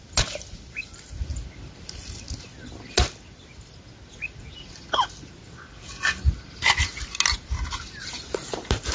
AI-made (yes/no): no